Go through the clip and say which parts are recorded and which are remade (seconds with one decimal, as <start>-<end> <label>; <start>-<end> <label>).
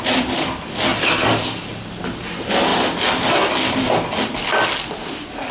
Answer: 0.0-5.5 recorded